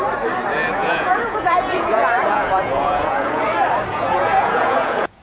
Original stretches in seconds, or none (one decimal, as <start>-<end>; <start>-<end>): 0.0-0.8; 3.4-3.9